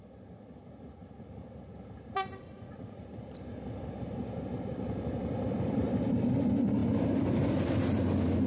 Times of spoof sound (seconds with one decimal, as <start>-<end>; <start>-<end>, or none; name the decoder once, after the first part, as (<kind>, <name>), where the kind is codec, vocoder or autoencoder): 2.5-3.0 (vocoder, Vocos)